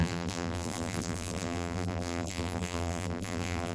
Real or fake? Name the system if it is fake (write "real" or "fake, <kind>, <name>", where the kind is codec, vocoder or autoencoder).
fake, vocoder, BigVGAN v2